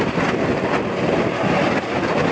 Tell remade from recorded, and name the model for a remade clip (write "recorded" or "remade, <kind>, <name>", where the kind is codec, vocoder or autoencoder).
recorded